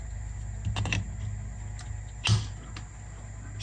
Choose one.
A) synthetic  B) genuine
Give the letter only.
B